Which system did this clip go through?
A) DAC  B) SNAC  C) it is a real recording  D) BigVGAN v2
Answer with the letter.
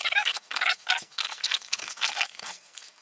B